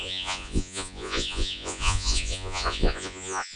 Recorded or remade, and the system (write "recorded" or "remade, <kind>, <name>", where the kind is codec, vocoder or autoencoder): remade, vocoder, Vocos